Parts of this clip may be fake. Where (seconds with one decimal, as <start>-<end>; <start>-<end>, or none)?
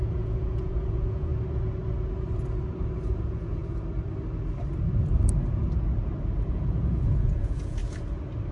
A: 0.0-1.3; 3.2-3.6; 6.5-7.8